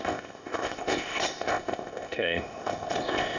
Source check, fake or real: fake